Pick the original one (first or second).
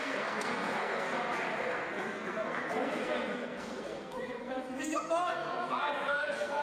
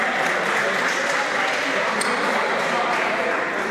second